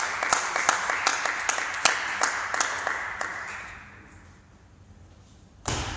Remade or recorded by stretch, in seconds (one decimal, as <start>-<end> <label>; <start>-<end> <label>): 0.0-6.0 recorded